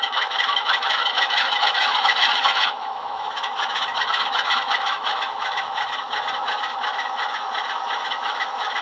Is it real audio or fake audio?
fake